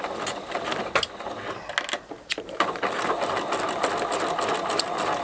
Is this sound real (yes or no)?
yes